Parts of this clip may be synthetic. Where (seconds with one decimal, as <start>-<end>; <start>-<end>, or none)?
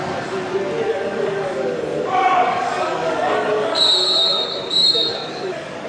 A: 0.9-3.8; 4.2-5.9